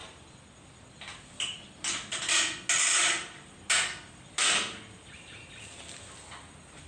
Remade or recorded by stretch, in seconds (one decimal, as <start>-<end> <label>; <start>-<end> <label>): 0.0-6.9 recorded